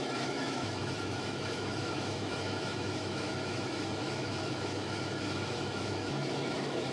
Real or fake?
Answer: fake